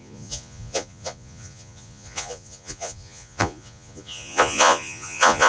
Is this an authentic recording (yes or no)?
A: no